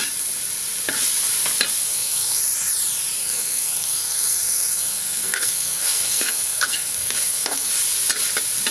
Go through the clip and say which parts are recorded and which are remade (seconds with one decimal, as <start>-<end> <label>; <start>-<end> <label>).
0.0-1.8 recorded; 1.8-2.4 remade; 2.4-3.2 recorded; 3.2-7.7 remade; 7.7-8.7 recorded